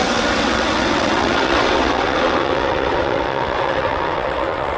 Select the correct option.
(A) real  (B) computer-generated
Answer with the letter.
B